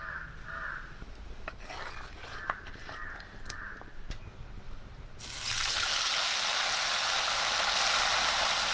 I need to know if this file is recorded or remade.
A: recorded